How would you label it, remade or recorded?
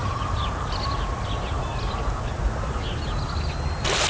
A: recorded